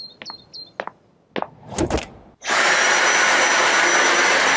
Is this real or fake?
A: real